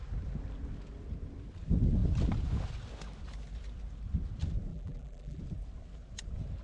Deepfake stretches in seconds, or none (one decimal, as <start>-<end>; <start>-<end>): 4.7-5.4